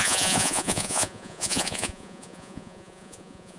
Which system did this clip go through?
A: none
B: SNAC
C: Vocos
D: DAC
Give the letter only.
C